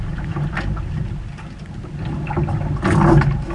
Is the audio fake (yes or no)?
no